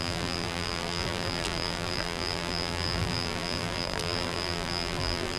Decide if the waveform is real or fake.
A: fake